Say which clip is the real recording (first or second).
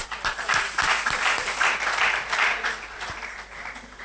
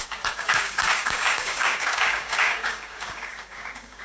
first